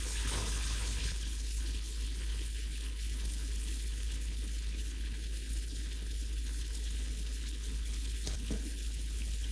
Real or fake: fake